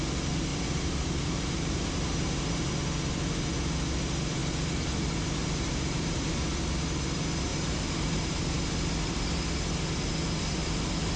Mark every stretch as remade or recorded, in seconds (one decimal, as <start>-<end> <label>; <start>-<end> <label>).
0.0-0.5 recorded; 0.5-2.7 remade; 2.7-7.5 recorded; 7.5-8.7 remade; 8.7-11.2 recorded